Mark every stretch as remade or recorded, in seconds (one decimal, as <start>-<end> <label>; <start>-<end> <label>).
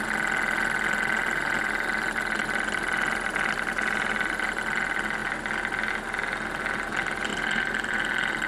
0.0-7.3 recorded; 7.3-8.0 remade; 8.0-8.5 recorded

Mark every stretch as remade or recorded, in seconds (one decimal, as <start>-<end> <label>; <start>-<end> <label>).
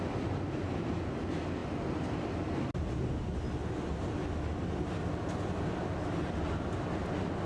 0.0-1.6 recorded; 1.6-2.4 remade; 2.4-7.5 recorded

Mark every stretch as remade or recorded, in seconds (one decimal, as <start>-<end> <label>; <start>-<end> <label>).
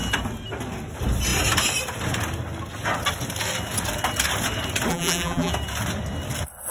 0.0-4.9 recorded; 4.9-5.5 remade; 5.5-6.7 recorded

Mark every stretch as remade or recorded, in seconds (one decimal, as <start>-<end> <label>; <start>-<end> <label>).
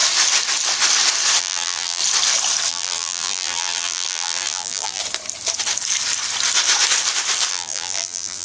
0.0-1.4 recorded; 1.4-2.0 remade; 2.0-2.7 recorded; 2.7-5.0 remade; 5.0-7.5 recorded; 7.5-8.4 remade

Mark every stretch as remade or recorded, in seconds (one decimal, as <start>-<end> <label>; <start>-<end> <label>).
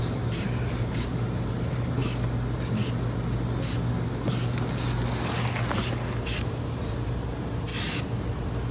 0.0-2.0 remade; 2.0-6.4 recorded; 6.4-7.7 remade; 7.7-8.7 recorded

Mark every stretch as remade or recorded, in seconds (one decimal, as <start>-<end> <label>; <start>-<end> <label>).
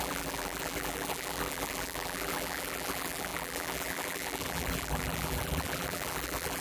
0.0-6.6 remade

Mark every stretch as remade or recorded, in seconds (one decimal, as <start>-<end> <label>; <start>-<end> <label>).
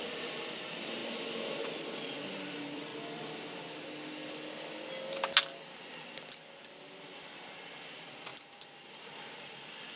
0.0-1.0 remade; 1.0-2.3 recorded; 2.3-2.9 remade; 2.9-7.8 recorded; 7.8-8.3 remade; 8.3-8.9 recorded; 8.9-10.0 remade